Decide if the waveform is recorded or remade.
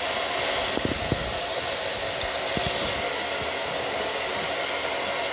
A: recorded